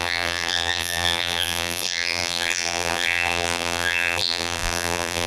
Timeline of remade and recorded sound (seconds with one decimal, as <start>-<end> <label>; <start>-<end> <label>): 0.0-5.3 remade

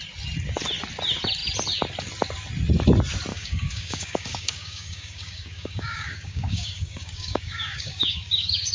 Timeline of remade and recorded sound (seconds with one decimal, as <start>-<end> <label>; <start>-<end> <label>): 0.0-3.3 recorded; 3.3-8.7 remade

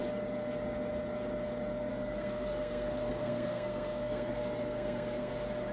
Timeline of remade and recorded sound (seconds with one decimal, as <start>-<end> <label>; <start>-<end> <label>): 0.0-1.9 recorded; 1.9-5.3 remade; 5.3-5.7 recorded